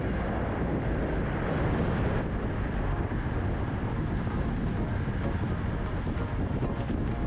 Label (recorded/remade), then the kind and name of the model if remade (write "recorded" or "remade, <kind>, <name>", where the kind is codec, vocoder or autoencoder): recorded